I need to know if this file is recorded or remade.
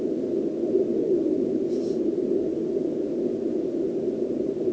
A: recorded